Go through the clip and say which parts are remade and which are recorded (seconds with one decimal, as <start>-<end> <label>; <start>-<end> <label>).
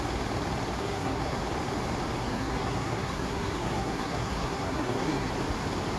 0.0-0.8 recorded; 0.8-1.4 remade; 1.4-2.2 recorded; 2.2-5.3 remade; 5.3-6.0 recorded